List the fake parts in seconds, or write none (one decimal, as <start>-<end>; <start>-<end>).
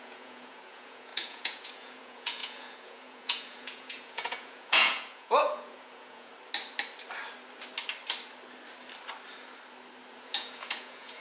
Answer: 0.0-6.3; 10.1-11.2